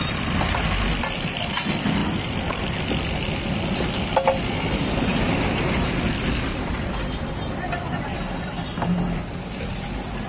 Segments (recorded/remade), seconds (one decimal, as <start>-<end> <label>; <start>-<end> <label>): 0.0-10.3 recorded